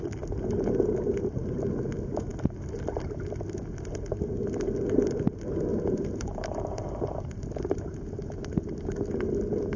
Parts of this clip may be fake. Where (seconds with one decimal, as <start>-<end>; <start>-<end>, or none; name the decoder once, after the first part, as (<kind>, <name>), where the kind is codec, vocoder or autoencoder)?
5.7-8.0 (vocoder, BigVGAN v2)